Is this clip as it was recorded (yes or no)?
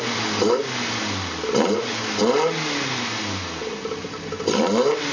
yes